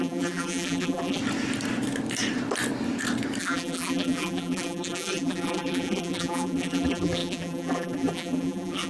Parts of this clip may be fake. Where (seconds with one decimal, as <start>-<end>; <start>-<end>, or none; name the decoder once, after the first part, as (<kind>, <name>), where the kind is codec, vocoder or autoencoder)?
0.0-1.2 (vocoder, BigVGAN v2); 3.4-8.9